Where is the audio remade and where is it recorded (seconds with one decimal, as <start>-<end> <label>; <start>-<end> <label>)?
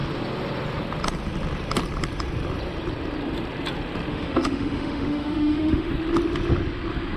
0.0-4.1 recorded; 4.1-5.9 remade; 5.9-7.2 recorded